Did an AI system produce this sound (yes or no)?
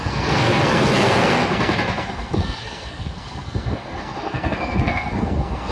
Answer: yes